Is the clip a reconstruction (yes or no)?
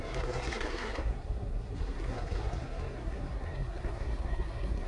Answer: yes